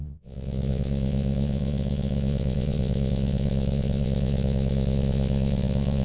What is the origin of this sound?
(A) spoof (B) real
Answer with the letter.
A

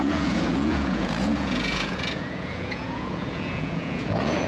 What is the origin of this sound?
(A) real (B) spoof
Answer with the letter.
B